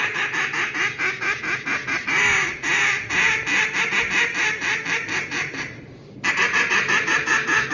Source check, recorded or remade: recorded